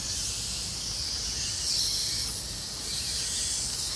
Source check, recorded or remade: recorded